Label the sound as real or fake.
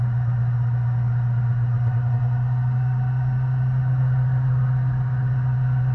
real